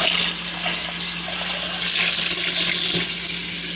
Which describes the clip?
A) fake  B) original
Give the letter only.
B